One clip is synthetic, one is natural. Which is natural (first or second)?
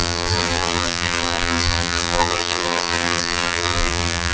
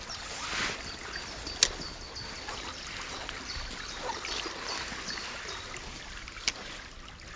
second